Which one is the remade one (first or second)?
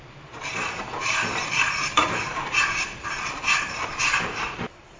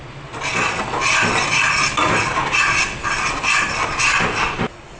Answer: first